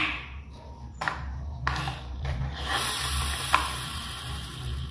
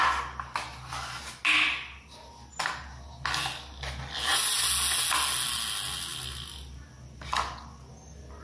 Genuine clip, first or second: second